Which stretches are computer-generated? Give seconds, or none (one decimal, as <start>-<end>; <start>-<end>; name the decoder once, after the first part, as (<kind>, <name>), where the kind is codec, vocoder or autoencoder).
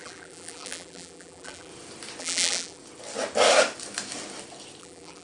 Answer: 0.0-1.7 (vocoder, BigVGAN v2); 2.2-2.8; 4.8-5.2